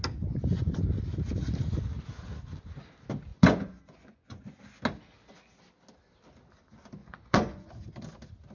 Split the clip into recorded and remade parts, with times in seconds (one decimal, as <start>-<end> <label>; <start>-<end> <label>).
0.0-3.3 recorded; 3.3-4.6 remade; 4.6-7.0 recorded; 7.0-7.7 remade; 7.7-8.5 recorded